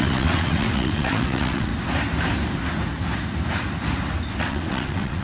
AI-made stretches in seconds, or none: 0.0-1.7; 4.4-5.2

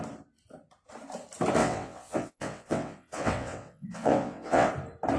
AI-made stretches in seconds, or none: 1.6-4.7

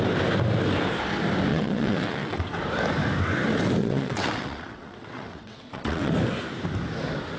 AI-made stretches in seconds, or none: 1.5-2.4; 3.8-6.1

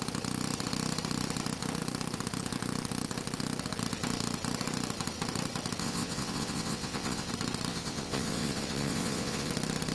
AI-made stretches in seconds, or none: 5.8-7.3; 7.7-9.5

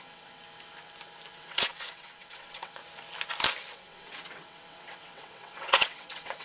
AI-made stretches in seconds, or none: 0.0-0.4; 1.3-2.8; 3.7-6.4